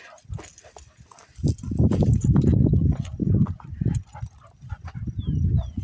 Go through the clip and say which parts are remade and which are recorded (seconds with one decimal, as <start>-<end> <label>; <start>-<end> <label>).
0.0-1.8 recorded; 1.8-4.2 remade; 4.2-5.8 recorded